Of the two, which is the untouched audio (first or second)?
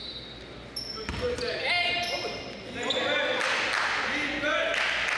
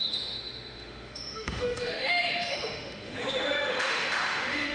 first